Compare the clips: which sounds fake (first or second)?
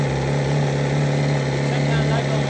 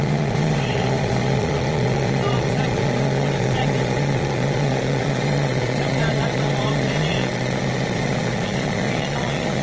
second